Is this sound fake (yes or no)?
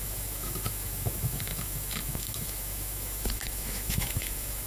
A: yes